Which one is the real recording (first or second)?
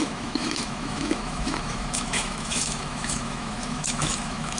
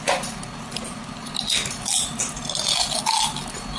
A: second